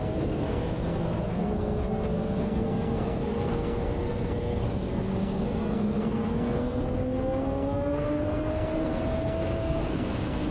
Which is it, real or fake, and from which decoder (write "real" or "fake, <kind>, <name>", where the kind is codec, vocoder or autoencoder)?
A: fake, codec, SNAC